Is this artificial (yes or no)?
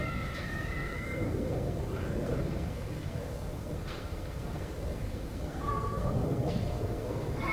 yes